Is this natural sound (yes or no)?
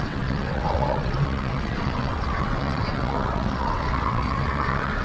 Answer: no